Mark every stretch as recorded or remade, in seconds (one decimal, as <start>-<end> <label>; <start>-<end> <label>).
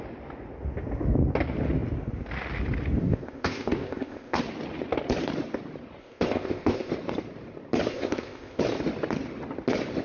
0.0-3.0 recorded; 3.0-4.4 remade; 4.4-6.0 recorded; 6.0-6.9 remade; 6.9-7.9 recorded; 7.9-8.6 remade; 8.6-10.0 recorded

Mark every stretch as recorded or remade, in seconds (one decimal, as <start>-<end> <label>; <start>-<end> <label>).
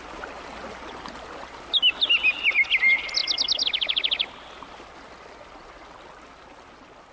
0.0-7.1 recorded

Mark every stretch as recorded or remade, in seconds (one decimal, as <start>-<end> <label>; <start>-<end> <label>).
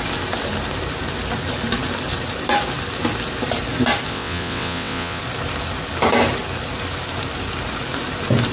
0.0-4.1 recorded; 4.1-5.2 remade; 5.2-8.5 recorded